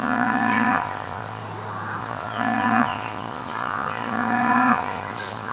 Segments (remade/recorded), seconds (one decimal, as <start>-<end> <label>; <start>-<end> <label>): 0.0-1.4 remade; 1.4-2.0 recorded; 2.0-5.5 remade